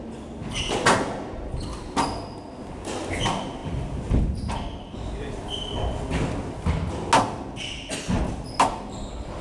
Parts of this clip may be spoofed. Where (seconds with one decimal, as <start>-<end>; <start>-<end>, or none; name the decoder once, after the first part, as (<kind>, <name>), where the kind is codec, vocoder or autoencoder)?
none